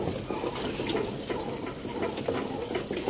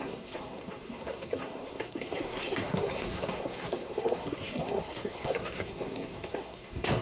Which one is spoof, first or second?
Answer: second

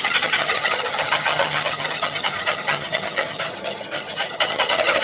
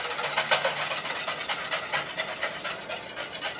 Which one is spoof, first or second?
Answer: first